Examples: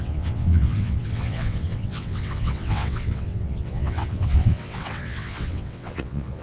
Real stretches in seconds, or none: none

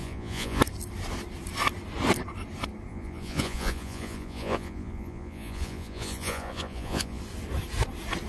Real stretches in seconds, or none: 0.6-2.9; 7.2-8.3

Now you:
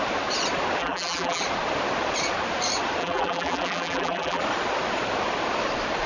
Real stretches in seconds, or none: 0.0-0.8; 1.4-3.0; 4.4-6.1

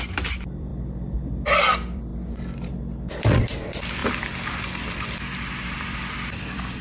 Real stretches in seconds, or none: 0.7-1.6; 2.1-3.2

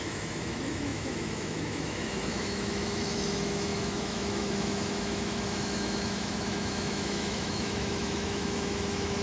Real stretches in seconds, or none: none

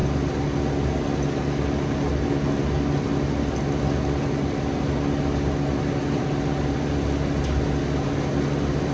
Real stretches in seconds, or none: 0.0-8.9